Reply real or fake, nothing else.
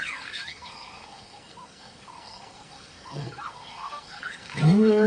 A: fake